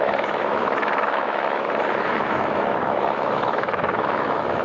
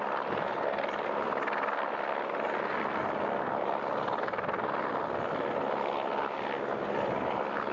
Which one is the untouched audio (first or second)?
second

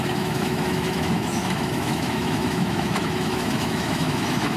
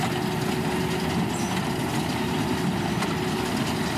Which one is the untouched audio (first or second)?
second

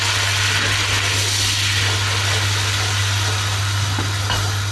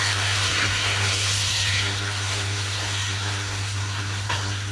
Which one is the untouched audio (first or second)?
first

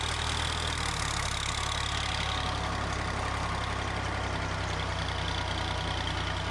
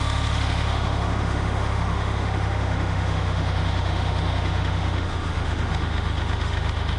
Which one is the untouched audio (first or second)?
first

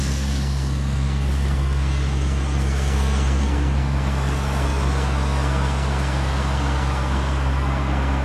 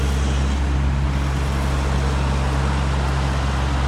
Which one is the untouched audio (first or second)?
second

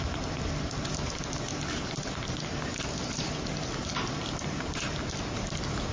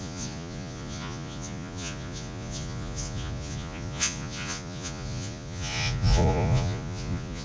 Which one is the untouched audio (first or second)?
first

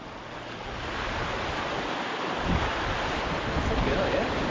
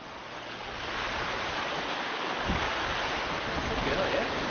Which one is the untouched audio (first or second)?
second